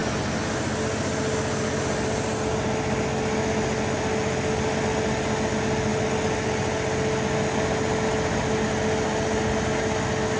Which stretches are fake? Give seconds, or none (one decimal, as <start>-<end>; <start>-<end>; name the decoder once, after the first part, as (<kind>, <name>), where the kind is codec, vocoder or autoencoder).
none